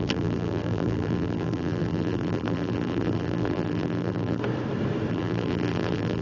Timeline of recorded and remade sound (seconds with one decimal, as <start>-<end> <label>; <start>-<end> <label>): 0.0-4.4 remade; 4.4-5.1 recorded; 5.1-6.2 remade